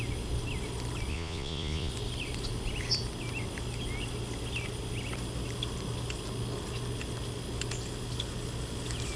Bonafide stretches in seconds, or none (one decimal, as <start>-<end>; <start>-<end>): 0.0-1.1; 1.9-9.2